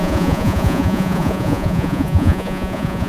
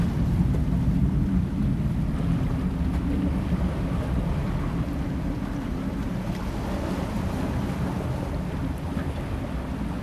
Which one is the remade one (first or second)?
first